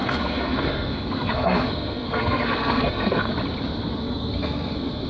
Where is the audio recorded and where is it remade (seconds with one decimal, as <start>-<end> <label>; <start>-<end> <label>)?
0.0-3.3 remade; 3.3-3.9 recorded; 3.9-5.1 remade